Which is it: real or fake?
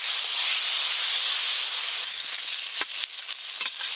real